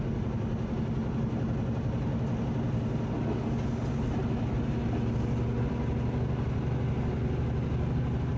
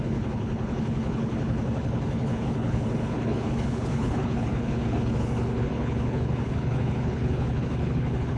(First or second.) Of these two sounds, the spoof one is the second